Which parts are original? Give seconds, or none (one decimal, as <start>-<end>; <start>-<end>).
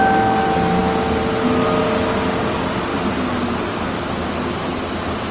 0.0-5.3